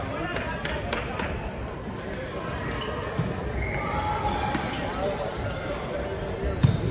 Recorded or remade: recorded